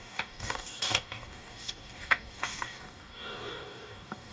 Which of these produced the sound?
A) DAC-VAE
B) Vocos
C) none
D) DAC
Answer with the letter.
D